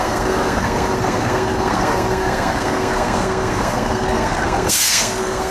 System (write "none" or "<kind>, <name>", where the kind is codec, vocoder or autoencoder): codec, SNAC